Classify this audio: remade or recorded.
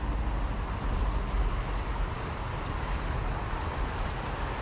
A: recorded